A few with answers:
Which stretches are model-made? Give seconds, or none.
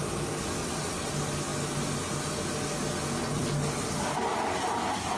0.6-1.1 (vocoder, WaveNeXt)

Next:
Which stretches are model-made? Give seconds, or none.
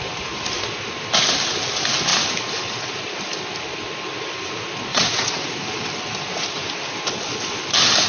4.9-5.5 (vocoder, WaveNeXt)